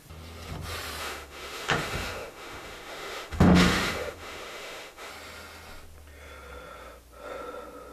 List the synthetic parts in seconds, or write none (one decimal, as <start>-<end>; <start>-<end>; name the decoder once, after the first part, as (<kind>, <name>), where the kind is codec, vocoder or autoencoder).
1.0-5.1 (autoencoder, DAC-VAE)